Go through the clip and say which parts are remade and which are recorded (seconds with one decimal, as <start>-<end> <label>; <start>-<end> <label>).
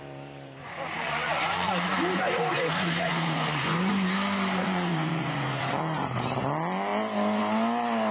0.0-0.6 recorded; 0.6-3.9 remade; 3.9-4.6 recorded; 4.6-5.6 remade; 5.6-8.1 recorded